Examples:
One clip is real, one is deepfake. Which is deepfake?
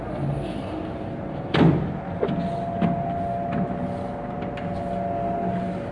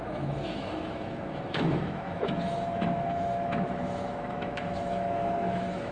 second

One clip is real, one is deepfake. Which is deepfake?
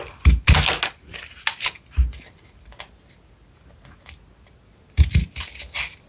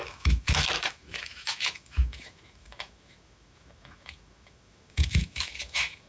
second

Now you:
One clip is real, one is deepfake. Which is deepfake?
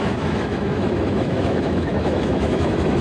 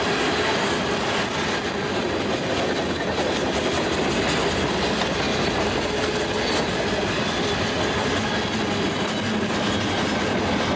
first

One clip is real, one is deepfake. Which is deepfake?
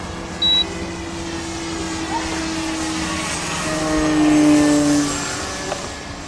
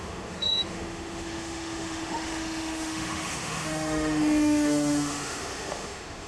second